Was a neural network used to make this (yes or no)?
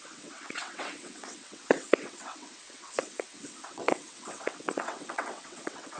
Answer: yes